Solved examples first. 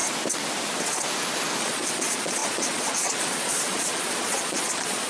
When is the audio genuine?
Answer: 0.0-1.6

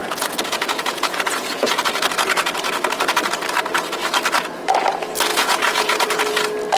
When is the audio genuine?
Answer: 1.8-5.3; 6.2-6.8

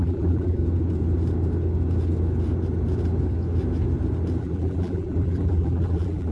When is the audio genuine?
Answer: 0.6-4.4

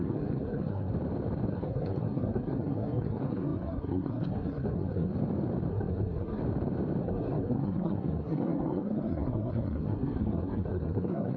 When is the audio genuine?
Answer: 0.9-1.5; 5.1-5.7; 6.4-7.0